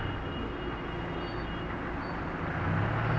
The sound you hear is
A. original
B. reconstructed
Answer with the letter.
A